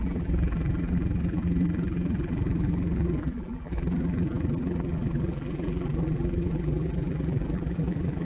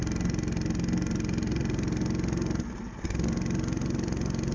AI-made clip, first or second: first